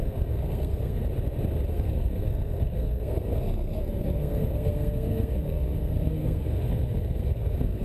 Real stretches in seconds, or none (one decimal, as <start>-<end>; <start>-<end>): 1.0-1.7